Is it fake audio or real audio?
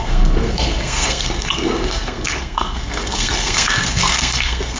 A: fake